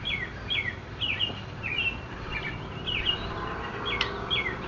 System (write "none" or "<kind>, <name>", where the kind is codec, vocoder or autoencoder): none